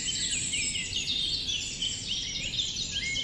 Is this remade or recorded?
recorded